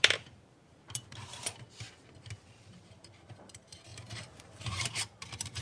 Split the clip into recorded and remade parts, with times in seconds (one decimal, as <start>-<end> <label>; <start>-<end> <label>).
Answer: 0.0-1.2 remade; 1.2-2.6 recorded; 2.6-5.6 remade

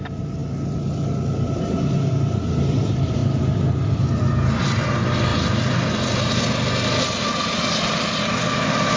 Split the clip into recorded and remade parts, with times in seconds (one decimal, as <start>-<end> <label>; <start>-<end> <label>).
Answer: 0.0-0.4 remade; 0.4-2.1 recorded; 2.1-3.2 remade; 3.2-4.6 recorded; 4.6-5.3 remade; 5.3-9.0 recorded

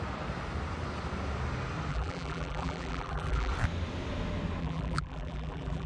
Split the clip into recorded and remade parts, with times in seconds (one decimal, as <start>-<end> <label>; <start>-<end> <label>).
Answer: 0.0-1.9 recorded; 1.9-3.5 remade; 3.5-4.6 recorded; 4.6-5.9 remade

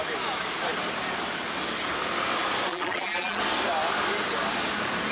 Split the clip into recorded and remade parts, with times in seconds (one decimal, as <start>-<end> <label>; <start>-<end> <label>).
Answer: 0.0-2.7 recorded; 2.7-3.4 remade; 3.4-5.1 recorded